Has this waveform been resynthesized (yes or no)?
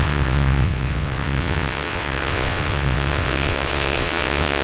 yes